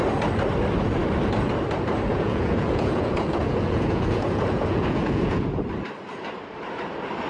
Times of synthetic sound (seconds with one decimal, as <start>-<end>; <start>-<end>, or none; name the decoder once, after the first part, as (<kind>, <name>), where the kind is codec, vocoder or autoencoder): 2.1-5.6 (vocoder, Vocos)